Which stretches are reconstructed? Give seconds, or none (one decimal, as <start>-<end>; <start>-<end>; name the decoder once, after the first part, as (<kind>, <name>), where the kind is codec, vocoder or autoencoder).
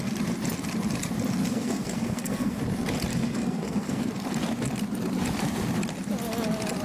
1.5-2.6 (codec, SNAC); 3.1-4.1